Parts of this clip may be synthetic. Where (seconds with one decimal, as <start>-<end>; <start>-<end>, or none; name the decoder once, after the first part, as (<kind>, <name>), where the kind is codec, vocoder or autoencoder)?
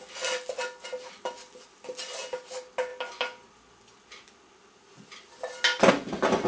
none